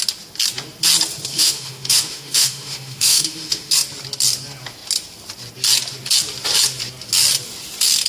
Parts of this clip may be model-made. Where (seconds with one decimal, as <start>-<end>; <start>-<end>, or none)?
1.3-3.7